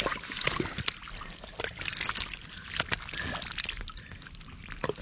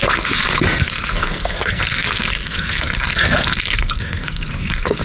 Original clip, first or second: first